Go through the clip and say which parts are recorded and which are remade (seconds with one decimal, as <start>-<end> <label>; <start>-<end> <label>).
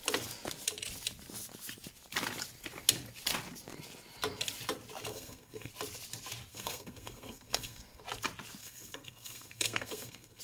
0.0-5.1 recorded; 5.1-5.7 remade; 5.7-6.5 recorded; 6.5-8.0 remade; 8.0-8.6 recorded; 8.6-10.4 remade